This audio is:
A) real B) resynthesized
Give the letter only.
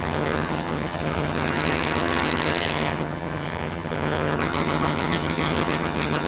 B